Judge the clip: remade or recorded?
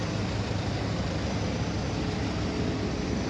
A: recorded